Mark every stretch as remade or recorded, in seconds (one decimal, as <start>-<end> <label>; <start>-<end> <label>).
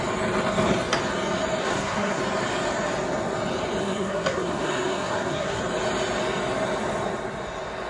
0.0-1.6 recorded; 1.6-2.2 remade; 2.2-3.8 recorded; 3.8-5.6 remade; 5.6-7.9 recorded